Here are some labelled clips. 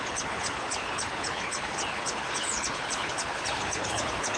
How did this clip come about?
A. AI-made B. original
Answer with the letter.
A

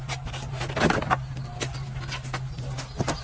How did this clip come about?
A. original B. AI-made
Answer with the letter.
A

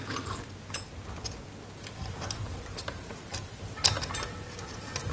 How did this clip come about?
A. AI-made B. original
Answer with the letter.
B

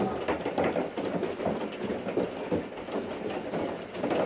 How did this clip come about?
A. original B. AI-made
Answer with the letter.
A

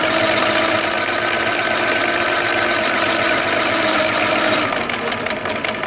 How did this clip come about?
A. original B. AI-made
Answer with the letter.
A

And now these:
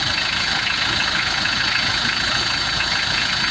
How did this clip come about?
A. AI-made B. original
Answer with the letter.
A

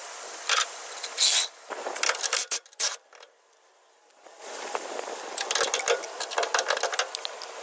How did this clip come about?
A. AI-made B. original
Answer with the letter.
B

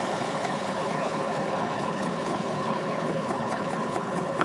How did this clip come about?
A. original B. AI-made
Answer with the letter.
B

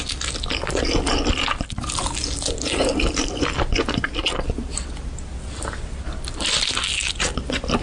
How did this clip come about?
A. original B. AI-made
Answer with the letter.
A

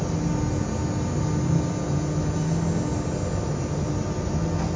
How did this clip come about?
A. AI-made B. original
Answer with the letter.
B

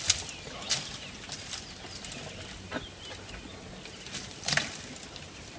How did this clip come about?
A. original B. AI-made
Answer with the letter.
A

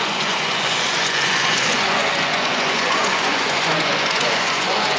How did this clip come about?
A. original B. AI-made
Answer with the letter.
B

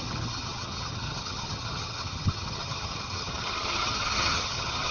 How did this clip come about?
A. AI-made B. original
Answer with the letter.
A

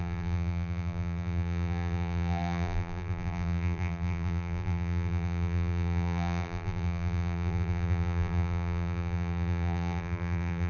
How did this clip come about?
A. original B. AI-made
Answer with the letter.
B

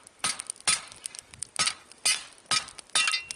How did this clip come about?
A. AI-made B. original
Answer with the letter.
B